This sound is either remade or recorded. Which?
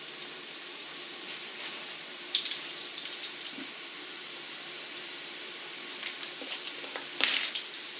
remade